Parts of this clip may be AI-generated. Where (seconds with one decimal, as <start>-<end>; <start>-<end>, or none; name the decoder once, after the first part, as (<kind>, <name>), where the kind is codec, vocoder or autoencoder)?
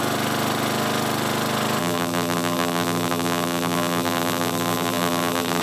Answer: 1.8-5.6 (vocoder, BigVGAN v2)